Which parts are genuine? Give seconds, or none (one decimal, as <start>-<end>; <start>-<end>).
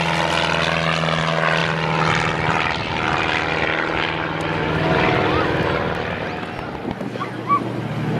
0.0-8.2